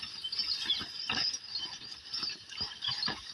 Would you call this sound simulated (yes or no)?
no